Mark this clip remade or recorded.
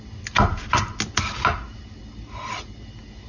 recorded